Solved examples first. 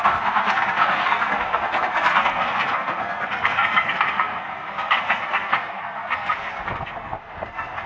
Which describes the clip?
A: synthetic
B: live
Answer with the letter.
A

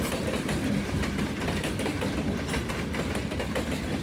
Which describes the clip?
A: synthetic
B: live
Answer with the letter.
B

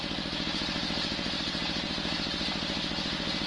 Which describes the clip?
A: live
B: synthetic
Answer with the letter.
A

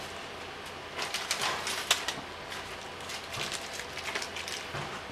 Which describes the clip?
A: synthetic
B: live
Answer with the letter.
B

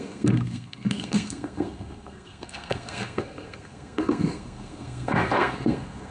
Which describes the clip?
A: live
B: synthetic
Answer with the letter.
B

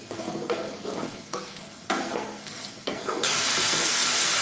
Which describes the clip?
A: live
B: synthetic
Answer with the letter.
B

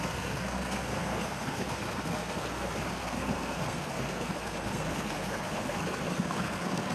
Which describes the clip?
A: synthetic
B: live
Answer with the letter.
A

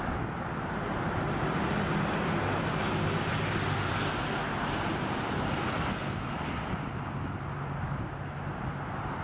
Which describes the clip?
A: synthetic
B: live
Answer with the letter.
B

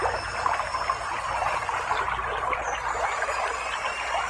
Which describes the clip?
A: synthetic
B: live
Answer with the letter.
B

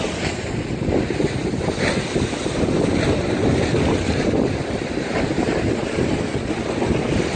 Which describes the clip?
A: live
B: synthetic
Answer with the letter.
A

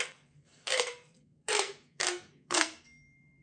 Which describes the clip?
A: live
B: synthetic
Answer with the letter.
B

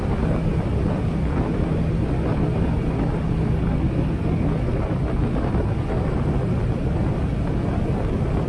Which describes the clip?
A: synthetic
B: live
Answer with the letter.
B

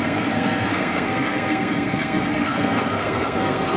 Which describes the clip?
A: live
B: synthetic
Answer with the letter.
B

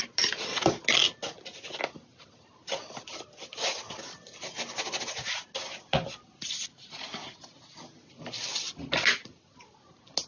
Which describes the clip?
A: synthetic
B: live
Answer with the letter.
B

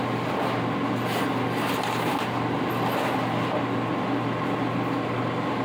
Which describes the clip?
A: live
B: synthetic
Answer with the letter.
A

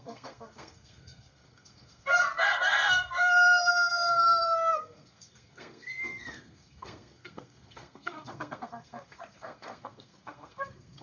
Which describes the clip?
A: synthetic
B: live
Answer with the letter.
A